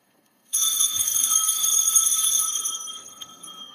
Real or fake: fake